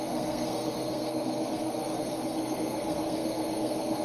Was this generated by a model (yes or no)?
yes